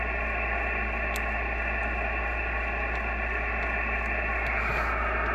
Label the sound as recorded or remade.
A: recorded